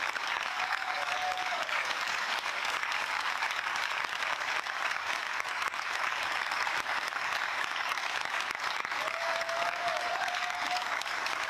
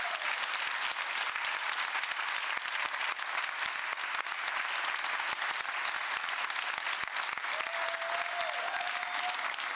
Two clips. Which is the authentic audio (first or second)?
second